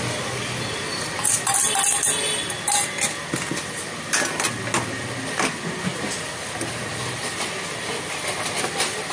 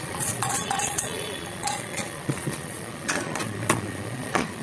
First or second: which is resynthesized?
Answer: second